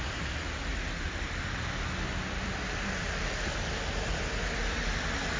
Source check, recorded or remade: recorded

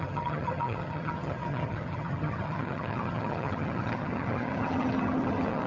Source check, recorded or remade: remade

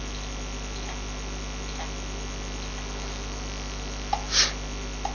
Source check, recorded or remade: recorded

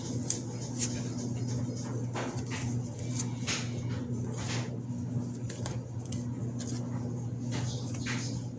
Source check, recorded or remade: recorded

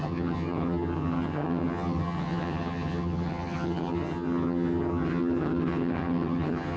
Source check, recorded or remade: remade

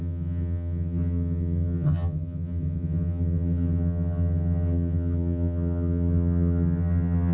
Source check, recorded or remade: remade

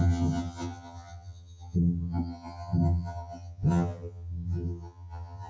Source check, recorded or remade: remade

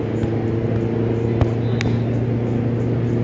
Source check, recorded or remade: recorded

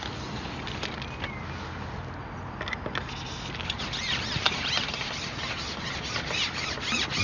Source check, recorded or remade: recorded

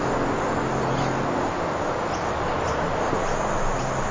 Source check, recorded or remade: recorded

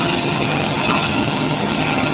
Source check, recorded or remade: remade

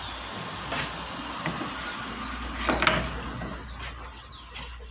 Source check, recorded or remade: recorded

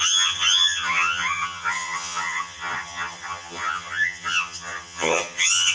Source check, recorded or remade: remade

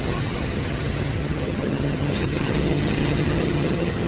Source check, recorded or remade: remade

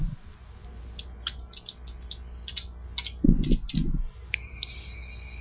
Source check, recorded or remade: recorded